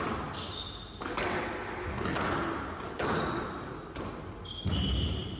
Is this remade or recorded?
recorded